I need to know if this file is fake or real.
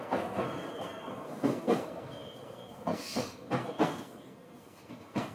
fake